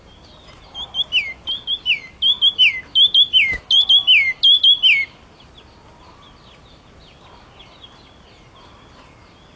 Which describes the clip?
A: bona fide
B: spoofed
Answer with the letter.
A